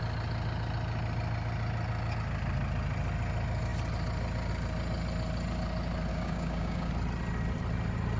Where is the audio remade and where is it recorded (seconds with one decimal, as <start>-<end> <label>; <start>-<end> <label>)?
0.0-6.1 recorded; 6.1-6.9 remade; 6.9-8.2 recorded